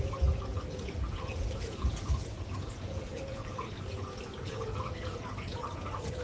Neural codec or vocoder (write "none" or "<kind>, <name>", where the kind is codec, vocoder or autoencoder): vocoder, Vocos